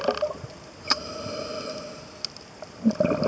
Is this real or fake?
real